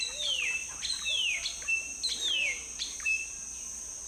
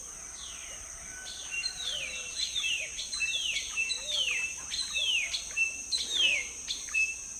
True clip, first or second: first